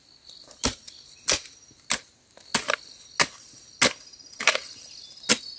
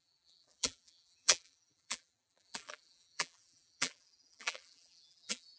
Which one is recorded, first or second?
first